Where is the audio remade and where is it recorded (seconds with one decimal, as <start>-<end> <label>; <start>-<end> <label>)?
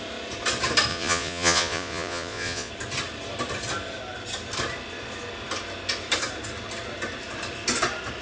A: 0.0-0.9 recorded; 0.9-2.7 remade; 2.7-8.2 recorded